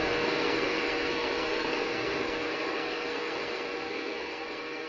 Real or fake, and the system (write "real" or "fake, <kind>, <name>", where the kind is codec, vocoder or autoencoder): fake, codec, SNAC